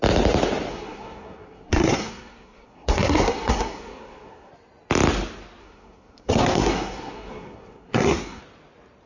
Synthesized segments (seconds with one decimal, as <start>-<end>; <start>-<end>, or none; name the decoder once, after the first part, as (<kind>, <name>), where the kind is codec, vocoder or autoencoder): 0.7-4.5 (codec, SNAC); 5.6-8.4